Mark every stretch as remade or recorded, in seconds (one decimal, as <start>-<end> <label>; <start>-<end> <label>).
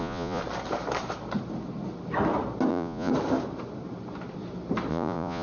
0.0-0.4 remade; 0.4-2.7 recorded; 2.7-3.1 remade; 3.1-4.9 recorded; 4.9-5.4 remade